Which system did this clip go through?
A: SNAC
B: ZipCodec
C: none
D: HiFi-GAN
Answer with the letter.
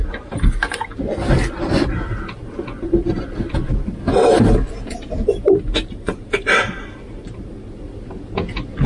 C